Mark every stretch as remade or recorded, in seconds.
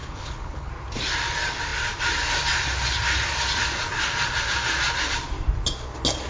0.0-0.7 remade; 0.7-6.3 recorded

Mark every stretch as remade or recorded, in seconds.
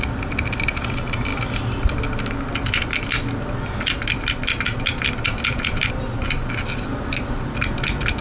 0.0-8.2 recorded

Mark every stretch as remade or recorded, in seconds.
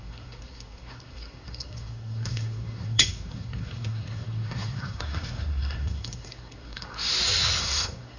0.0-7.1 remade; 7.1-7.6 recorded; 7.6-8.2 remade